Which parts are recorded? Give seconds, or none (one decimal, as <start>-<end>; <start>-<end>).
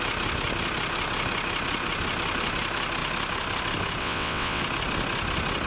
0.0-4.0; 4.6-5.7